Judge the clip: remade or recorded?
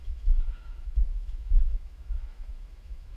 remade